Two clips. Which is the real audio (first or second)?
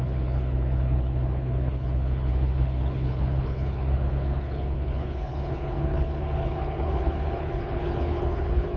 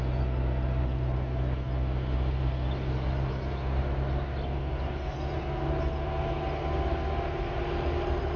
second